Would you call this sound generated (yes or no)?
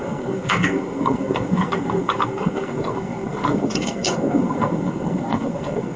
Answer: yes